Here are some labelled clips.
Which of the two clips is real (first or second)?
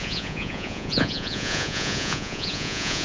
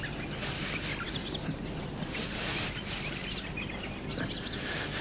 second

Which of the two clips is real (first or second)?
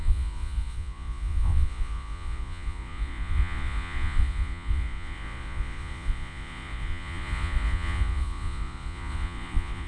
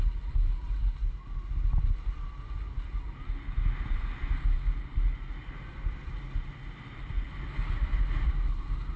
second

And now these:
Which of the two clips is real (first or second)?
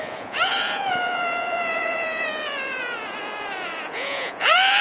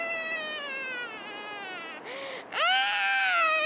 second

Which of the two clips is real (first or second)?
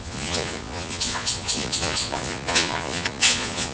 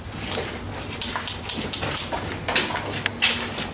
second